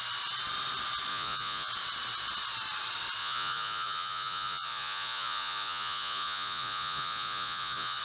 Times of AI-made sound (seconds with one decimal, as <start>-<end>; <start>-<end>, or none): 1.1-1.7; 3.2-8.0